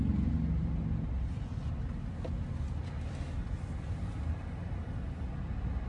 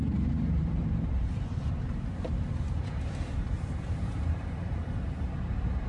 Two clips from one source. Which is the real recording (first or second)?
first